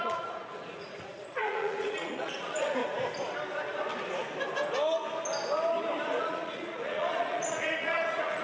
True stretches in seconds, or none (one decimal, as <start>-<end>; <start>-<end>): 2.8-6.2